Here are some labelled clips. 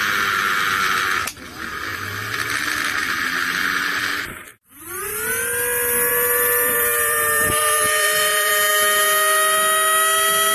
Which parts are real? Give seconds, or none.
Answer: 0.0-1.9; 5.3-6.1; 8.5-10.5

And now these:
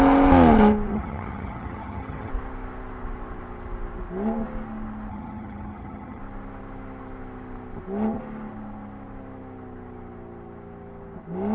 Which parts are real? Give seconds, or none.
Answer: 0.0-0.9; 2.3-5.1; 6.2-11.5

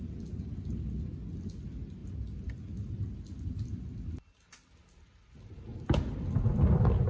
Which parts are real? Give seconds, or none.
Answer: 0.0-7.1

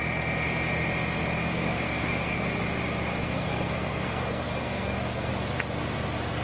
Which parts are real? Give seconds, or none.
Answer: 0.0-1.5; 2.6-3.2; 5.3-6.4

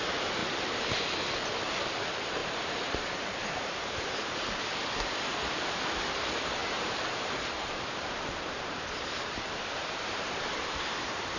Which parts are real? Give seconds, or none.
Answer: 0.0-0.4; 1.0-2.4; 4.6-6.6

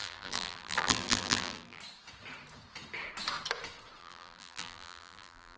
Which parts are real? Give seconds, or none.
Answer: 1.8-4.0

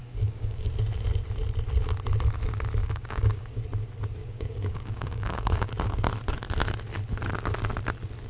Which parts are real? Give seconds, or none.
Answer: 0.7-2.8; 3.6-4.2; 5.7-8.3